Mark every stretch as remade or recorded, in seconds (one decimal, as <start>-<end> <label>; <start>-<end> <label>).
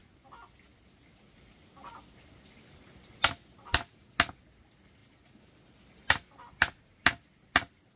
0.0-8.0 recorded